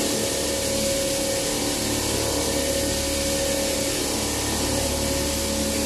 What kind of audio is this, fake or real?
real